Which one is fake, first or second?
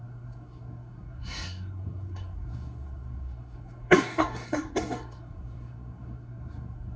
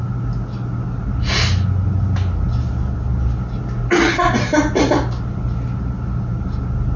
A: first